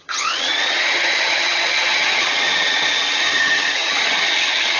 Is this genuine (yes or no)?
no